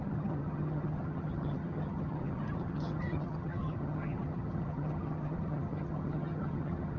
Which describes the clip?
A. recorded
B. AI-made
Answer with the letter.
B